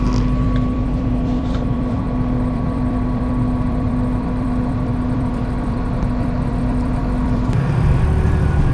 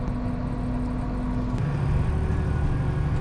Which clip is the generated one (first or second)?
first